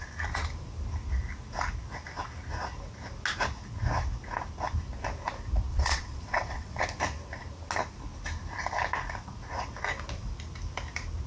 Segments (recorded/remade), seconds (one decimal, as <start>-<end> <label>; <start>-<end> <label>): 0.0-5.7 recorded; 5.7-6.8 remade; 6.8-11.3 recorded